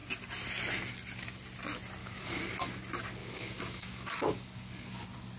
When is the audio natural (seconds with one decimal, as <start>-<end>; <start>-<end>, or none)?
0.0-2.0; 2.5-3.2; 5.0-5.4